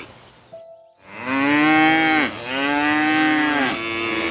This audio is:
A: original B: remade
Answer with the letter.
A